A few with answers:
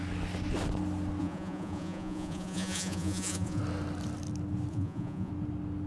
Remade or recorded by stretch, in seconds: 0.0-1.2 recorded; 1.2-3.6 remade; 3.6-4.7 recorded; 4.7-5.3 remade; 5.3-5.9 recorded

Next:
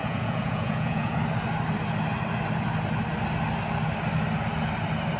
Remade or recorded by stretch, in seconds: 0.0-1.2 remade; 1.2-5.2 recorded

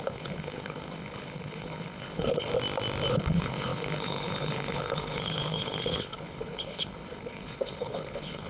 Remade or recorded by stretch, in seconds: 0.0-2.5 remade; 2.5-3.1 recorded; 3.1-8.5 remade

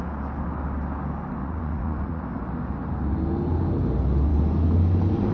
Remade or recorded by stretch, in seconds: 0.0-1.4 recorded; 1.4-2.2 remade; 2.2-5.3 recorded

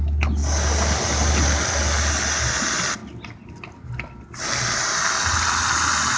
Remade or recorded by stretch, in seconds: 0.0-6.2 recorded

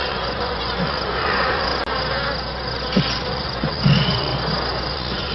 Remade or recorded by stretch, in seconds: 0.0-1.7 remade; 1.7-3.1 recorded; 3.1-4.3 remade; 4.3-4.8 recorded; 4.8-5.3 remade